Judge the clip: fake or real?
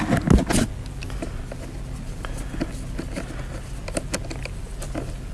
real